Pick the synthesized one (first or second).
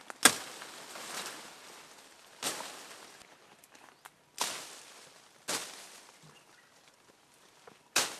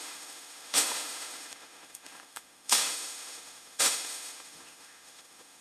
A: second